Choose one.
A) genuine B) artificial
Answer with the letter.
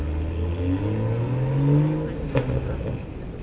A